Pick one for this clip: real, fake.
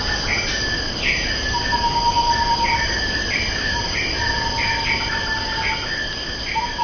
real